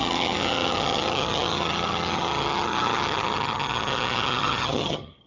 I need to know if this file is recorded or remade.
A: remade